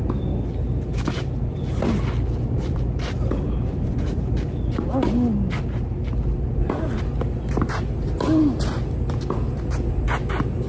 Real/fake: real